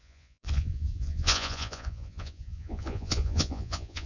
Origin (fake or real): fake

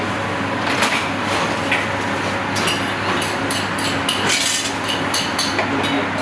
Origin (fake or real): real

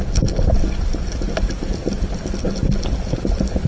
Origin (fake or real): real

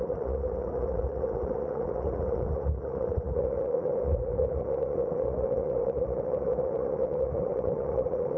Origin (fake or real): fake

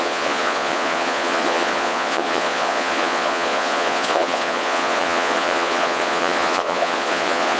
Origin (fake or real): fake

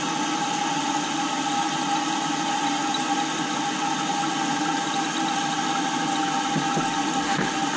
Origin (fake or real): real